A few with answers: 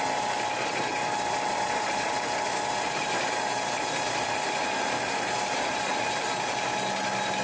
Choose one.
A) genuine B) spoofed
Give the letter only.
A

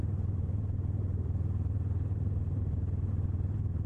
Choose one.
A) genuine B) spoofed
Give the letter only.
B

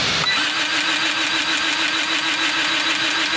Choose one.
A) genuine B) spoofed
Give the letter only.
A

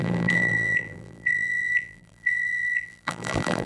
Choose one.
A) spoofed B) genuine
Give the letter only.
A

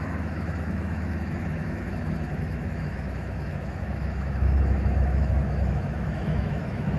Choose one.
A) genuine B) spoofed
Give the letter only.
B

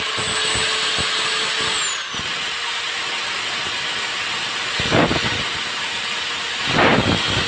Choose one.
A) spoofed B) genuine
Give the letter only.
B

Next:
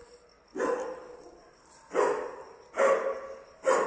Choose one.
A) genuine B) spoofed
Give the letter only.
A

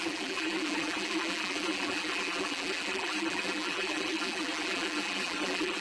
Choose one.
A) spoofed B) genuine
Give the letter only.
A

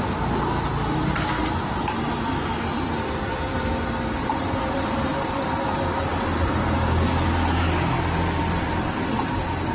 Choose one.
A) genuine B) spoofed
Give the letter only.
A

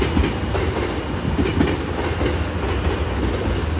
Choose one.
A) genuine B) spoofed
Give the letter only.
A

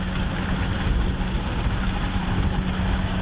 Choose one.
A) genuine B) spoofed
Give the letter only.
A